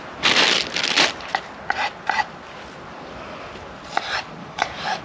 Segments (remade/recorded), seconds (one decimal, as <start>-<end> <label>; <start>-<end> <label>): 0.0-4.4 recorded; 4.4-5.0 remade